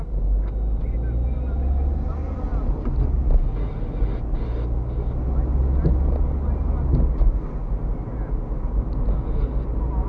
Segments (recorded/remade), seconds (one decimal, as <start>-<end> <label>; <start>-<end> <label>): 0.0-10.1 recorded

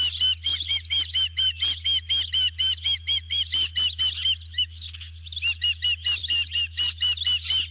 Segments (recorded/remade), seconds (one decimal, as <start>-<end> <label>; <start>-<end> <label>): 0.0-7.7 recorded

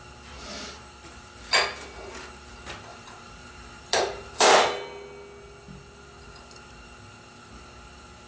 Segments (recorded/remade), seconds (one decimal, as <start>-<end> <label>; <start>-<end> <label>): 0.0-0.4 recorded; 0.4-1.3 remade; 1.3-2.9 recorded; 2.9-4.5 remade; 4.5-8.3 recorded

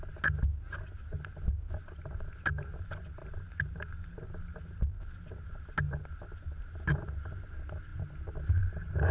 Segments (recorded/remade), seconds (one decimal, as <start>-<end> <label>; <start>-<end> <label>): 0.0-3.2 recorded; 3.2-4.2 remade; 4.2-9.1 recorded

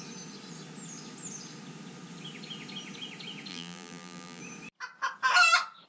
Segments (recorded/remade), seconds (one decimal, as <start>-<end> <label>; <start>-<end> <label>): 0.0-3.5 recorded; 3.5-4.4 remade; 4.4-5.9 recorded

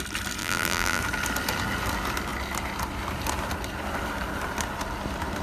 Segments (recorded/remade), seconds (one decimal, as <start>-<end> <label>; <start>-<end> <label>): 0.0-0.4 recorded; 0.4-1.0 remade; 1.0-5.4 recorded

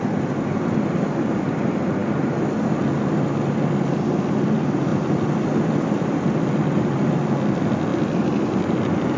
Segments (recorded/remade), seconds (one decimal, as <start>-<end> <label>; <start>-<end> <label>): 0.0-4.9 recorded; 4.9-7.1 remade; 7.1-7.9 recorded; 7.9-8.6 remade; 8.6-9.2 recorded

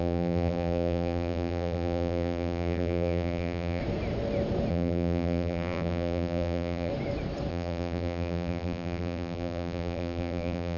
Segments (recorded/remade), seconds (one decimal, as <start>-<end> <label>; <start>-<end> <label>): 0.0-3.8 remade; 3.8-4.7 recorded; 4.7-6.9 remade; 6.9-7.5 recorded; 7.5-10.8 remade